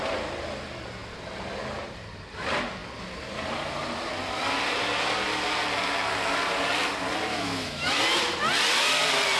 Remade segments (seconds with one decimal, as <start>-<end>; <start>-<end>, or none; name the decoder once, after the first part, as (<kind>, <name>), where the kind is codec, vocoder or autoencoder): 7.3-8.0 (autoencoder, DAC-VAE)